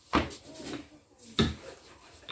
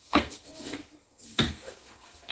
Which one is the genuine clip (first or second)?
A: first